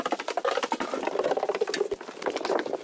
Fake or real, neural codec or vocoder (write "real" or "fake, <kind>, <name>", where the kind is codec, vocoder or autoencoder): real